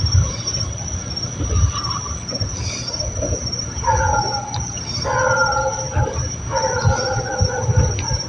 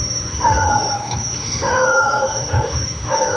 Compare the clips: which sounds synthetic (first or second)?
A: second